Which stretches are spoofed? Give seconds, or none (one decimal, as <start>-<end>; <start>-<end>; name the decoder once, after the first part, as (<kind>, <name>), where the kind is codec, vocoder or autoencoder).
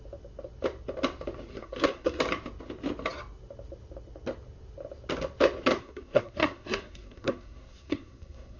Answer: 1.5-2.2 (codec, SNAC); 5.8-8.6